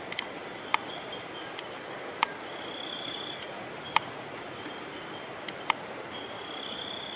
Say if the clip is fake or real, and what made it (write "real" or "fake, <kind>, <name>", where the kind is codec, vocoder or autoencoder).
real